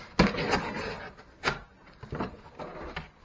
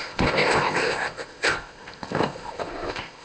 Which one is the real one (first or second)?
first